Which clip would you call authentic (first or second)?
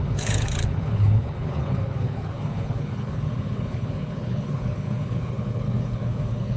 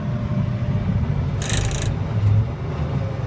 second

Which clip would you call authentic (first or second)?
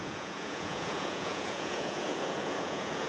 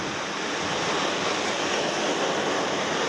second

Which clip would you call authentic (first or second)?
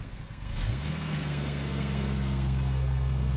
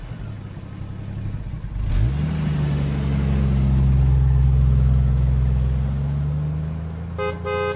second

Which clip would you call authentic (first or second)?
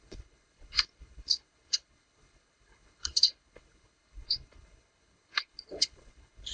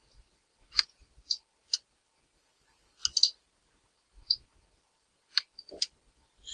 second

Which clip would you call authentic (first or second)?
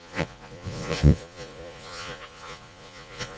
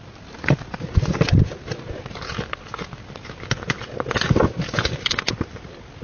second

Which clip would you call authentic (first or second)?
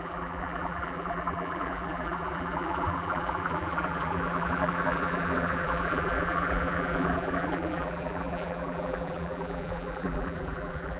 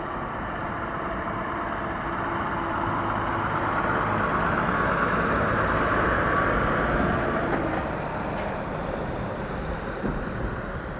second